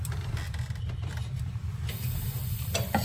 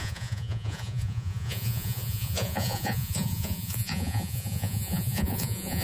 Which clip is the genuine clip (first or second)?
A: first